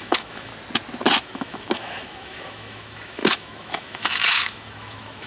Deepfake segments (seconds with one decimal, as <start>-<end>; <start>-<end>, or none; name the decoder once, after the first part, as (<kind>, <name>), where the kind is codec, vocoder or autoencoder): 0.0-0.5 (autoencoder, DAC-VAE); 1.2-5.3